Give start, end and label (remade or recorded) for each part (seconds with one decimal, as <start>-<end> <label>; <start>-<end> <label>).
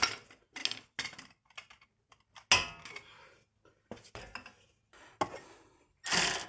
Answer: 0.0-6.5 recorded